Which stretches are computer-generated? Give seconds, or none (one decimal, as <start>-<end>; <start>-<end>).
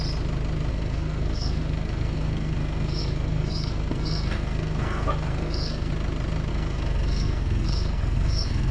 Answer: 0.7-5.9; 6.5-8.7